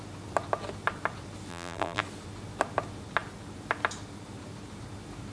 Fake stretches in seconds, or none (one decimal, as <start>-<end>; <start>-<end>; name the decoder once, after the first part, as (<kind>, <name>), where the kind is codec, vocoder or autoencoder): 1.5-2.0 (vocoder, BigVGAN v2)